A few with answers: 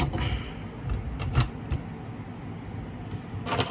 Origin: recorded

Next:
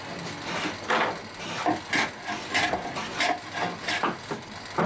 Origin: recorded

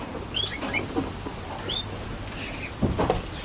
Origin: recorded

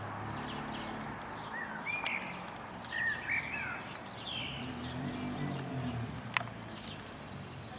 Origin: recorded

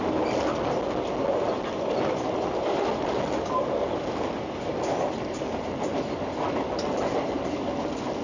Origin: recorded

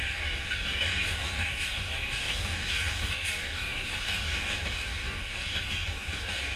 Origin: remade